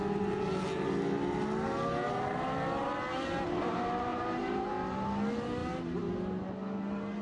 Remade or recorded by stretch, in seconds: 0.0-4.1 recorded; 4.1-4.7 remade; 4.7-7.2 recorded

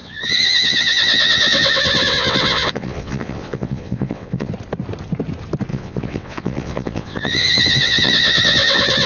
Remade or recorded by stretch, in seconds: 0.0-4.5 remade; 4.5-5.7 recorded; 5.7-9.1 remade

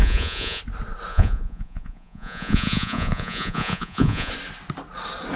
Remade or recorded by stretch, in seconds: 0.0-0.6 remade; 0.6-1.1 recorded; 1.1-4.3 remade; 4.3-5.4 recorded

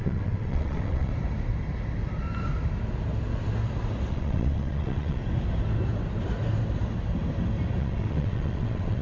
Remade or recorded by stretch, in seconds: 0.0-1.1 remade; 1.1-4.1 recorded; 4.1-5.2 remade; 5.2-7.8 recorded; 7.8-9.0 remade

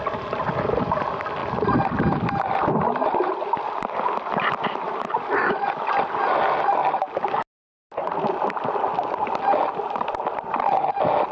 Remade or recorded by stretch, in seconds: 0.0-11.3 recorded